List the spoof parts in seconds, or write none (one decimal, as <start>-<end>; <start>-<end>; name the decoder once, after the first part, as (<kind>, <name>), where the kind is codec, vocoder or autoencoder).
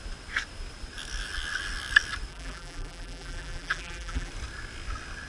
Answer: 2.3-4.3 (vocoder, BigVGAN v2)